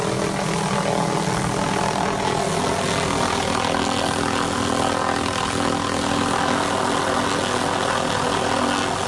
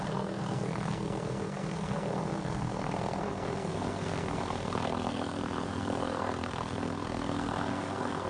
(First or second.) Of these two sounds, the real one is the first